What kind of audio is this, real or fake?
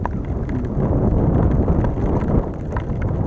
real